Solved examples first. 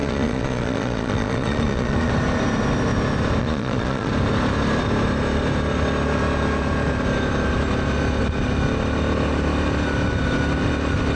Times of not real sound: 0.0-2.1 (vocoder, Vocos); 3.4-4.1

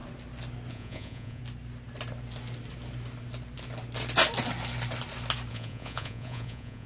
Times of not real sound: 0.7-1.4 (vocoder, Vocos); 5.5-6.9

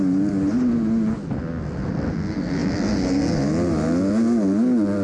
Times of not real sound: none

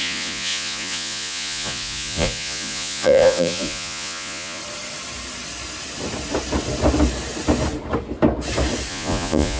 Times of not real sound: 0.0-4.6 (vocoder, Vocos); 8.9-9.6

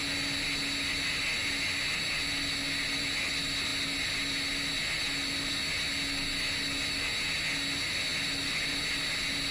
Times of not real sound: none